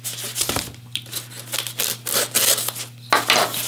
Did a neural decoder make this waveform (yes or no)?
no